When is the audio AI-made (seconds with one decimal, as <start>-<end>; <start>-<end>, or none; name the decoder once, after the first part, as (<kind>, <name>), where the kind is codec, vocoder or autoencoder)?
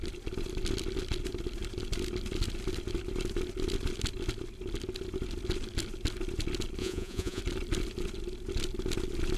6.8-7.4 (vocoder, Vocos)